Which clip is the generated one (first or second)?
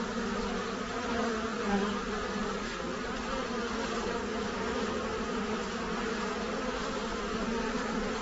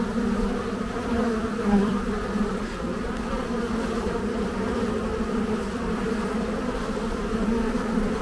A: second